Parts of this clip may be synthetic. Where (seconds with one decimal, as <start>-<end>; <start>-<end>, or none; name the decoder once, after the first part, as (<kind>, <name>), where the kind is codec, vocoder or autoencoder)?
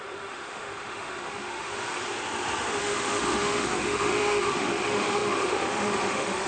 0.0-2.0 (autoencoder, DAC-VAE); 2.8-6.5